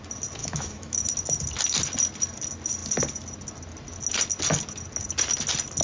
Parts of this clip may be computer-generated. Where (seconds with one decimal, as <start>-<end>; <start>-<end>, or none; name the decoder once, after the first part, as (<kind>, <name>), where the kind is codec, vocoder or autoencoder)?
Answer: 0.4-1.1 (autoencoder, DAC-VAE)